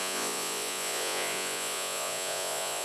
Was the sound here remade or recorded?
remade